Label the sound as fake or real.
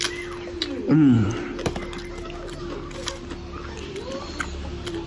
real